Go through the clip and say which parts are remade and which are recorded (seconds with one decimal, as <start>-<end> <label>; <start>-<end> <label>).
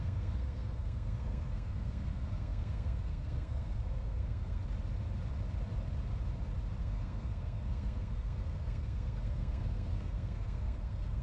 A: 0.0-4.6 remade; 4.6-6.8 recorded; 6.8-11.2 remade